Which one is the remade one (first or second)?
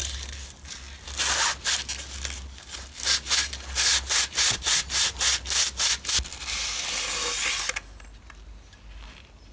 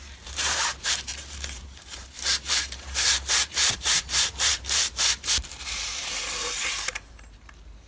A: second